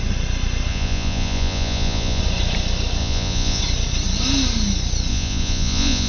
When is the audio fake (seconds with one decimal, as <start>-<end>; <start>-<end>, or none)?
0.7-2.2; 3.0-3.6; 5.1-6.1